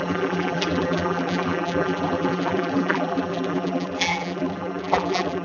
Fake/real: fake